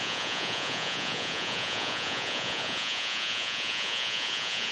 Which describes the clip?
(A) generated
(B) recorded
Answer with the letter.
A